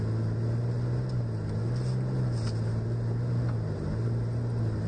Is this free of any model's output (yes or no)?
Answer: yes